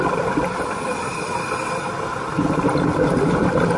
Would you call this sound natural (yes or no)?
yes